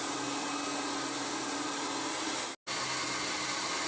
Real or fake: real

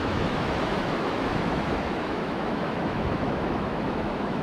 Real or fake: fake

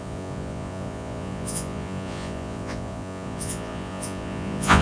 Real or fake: fake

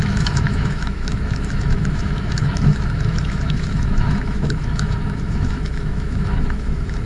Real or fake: fake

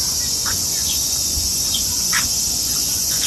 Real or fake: fake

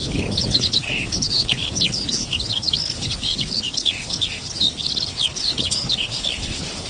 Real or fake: fake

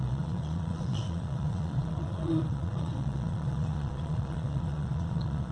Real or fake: fake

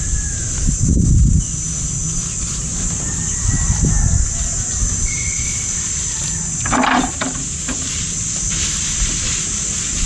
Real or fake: real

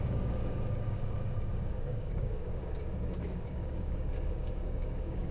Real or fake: fake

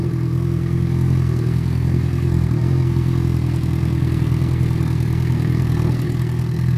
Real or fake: fake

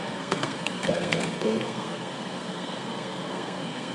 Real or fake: fake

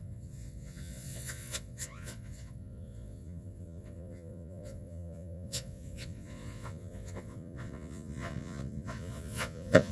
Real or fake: fake